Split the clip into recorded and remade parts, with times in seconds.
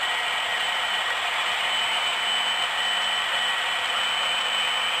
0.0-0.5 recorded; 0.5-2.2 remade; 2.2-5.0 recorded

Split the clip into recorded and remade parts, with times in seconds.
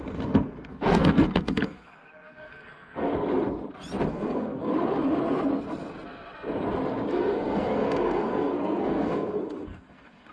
0.0-3.1 remade; 3.1-4.1 recorded; 4.1-4.7 remade; 4.7-7.1 recorded; 7.1-10.3 remade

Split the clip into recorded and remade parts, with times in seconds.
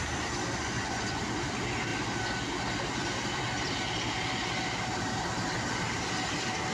0.0-0.6 recorded; 0.6-1.2 remade; 1.2-6.7 recorded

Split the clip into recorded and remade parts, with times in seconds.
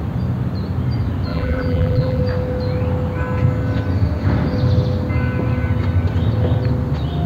0.0-1.3 recorded; 1.3-2.2 remade; 2.2-7.3 recorded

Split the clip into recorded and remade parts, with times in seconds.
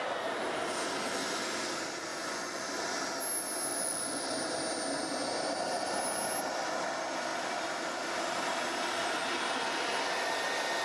0.0-2.1 recorded; 2.1-2.7 remade; 2.7-3.7 recorded; 3.7-4.2 remade; 4.2-10.8 recorded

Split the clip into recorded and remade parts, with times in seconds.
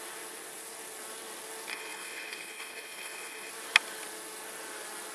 0.0-1.7 recorded; 1.7-3.5 remade; 3.5-5.1 recorded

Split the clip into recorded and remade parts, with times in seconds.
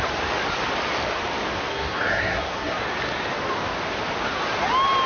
0.0-1.7 recorded; 1.7-2.8 remade; 2.8-5.1 recorded